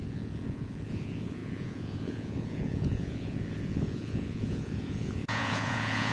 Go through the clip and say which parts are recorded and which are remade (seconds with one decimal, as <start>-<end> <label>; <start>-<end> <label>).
0.0-6.1 remade